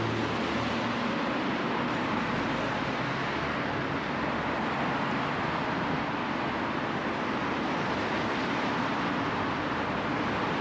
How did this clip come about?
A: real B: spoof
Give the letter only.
A